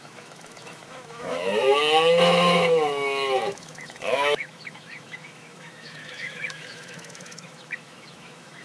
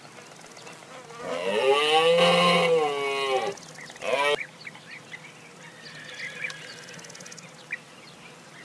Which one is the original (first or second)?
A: second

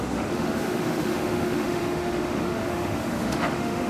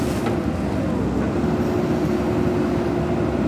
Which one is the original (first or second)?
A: second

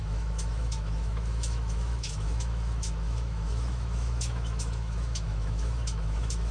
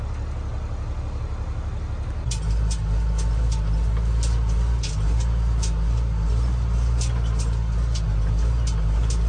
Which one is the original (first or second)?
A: second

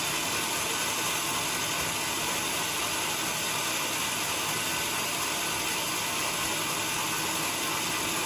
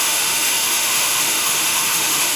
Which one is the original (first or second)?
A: first